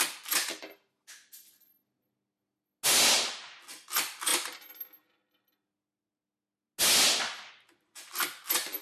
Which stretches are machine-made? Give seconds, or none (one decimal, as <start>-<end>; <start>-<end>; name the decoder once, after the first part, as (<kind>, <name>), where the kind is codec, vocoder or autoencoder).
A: none